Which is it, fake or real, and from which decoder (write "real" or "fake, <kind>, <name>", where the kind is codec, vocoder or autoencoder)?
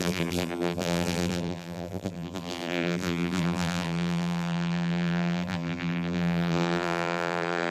fake, vocoder, BigVGAN v2